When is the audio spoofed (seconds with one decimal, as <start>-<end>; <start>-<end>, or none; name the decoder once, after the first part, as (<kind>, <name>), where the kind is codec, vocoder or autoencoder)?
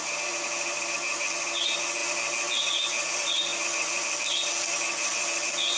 none